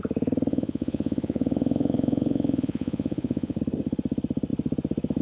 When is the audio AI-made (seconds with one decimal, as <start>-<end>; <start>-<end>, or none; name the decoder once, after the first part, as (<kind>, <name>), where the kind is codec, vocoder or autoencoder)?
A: 0.5-3.6 (vocoder, Vocos)